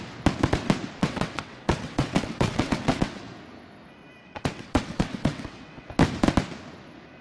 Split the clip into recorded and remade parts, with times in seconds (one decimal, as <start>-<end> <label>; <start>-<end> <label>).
0.0-1.0 recorded; 1.0-3.2 remade; 3.2-4.2 recorded; 4.2-5.9 remade; 5.9-7.2 recorded